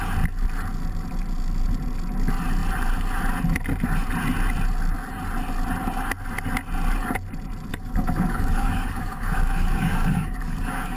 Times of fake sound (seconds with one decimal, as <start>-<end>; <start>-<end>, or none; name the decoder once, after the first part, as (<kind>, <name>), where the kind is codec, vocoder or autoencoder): 7.7-11.0 (codec, DAC)